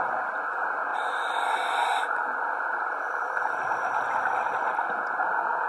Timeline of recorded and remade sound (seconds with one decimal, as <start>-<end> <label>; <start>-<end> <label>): 0.0-5.7 recorded